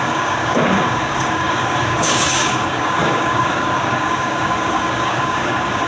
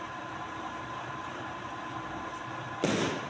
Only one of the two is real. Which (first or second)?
second